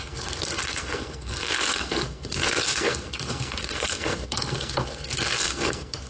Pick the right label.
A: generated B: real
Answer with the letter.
A